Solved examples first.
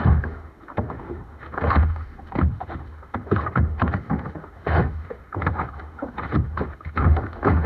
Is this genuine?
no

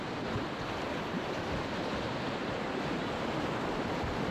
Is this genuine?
yes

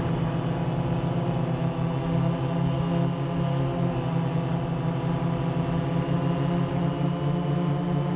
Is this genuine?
yes